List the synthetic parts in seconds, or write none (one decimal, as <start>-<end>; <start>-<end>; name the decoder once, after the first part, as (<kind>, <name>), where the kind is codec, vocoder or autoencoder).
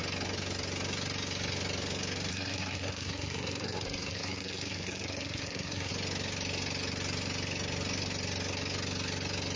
2.3-5.9 (codec, SNAC)